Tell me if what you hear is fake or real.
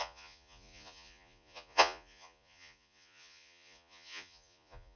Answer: fake